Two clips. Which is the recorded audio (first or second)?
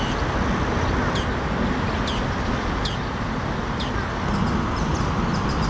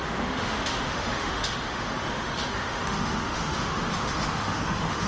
first